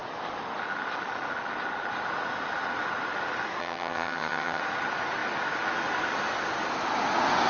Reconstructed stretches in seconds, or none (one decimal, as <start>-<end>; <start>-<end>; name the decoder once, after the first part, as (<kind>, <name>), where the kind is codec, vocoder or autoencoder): 3.6-4.6 (vocoder, HiFi-GAN)